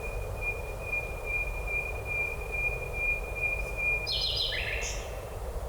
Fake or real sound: real